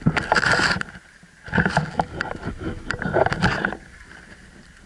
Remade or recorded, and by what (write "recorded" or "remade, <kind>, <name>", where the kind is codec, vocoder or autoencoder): recorded